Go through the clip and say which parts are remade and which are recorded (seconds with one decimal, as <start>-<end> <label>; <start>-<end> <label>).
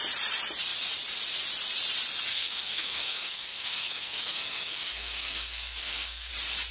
0.0-2.3 recorded; 2.3-6.3 remade; 6.3-6.7 recorded